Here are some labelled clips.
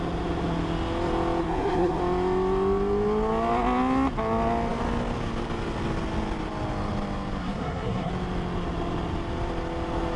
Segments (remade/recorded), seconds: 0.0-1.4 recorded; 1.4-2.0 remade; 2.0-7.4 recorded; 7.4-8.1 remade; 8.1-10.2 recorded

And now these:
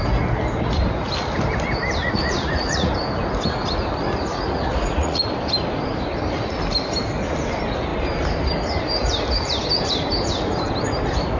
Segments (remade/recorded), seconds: 0.0-2.0 recorded; 2.0-2.9 remade; 2.9-4.3 recorded; 4.3-5.2 remade; 5.2-11.4 recorded

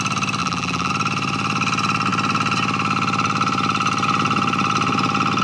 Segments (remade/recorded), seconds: 0.0-0.4 recorded; 0.4-0.9 remade; 0.9-5.4 recorded

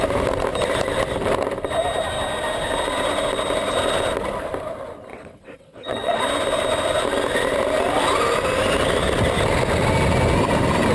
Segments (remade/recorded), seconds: 0.0-5.1 recorded; 5.1-6.2 remade; 6.2-10.9 recorded

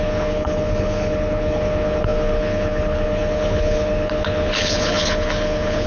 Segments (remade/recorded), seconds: 0.0-5.9 remade